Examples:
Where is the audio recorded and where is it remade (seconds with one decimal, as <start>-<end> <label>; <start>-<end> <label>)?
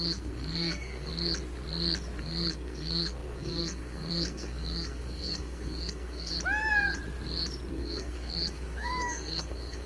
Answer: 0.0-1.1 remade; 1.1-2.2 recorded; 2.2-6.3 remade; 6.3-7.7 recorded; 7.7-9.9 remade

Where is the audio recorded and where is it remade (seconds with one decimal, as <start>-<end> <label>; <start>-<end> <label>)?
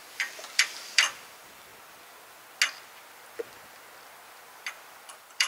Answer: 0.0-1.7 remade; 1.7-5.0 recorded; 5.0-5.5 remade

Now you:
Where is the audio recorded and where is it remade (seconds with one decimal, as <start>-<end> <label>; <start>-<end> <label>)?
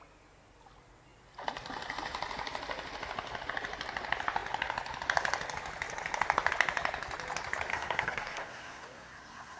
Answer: 0.0-7.7 recorded; 7.7-9.6 remade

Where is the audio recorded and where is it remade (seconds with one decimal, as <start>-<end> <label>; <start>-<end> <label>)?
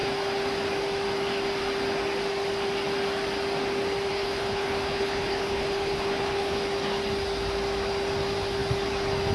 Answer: 0.0-4.1 recorded; 4.1-6.6 remade; 6.6-9.3 recorded